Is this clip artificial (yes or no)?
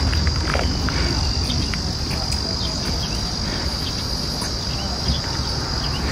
no